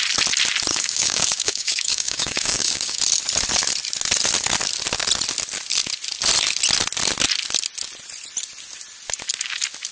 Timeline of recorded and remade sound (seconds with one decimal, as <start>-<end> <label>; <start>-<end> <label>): 0.0-0.7 recorded; 0.7-3.0 remade; 3.0-9.9 recorded